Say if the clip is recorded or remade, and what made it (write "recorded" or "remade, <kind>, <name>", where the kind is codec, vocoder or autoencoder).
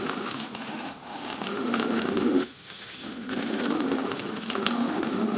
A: remade, autoencoder, DAC-VAE